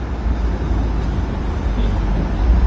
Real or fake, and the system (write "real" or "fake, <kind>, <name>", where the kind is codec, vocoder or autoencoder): real